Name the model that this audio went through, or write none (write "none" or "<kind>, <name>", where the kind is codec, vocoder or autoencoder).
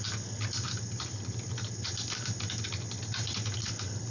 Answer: none